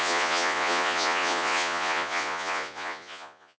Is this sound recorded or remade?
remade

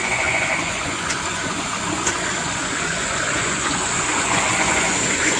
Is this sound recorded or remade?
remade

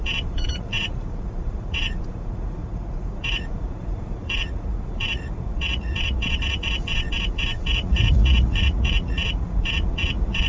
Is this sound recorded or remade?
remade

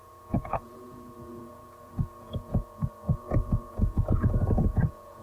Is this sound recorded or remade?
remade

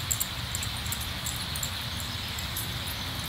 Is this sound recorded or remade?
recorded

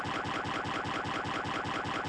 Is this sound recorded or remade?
recorded